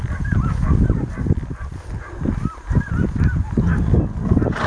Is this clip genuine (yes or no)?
yes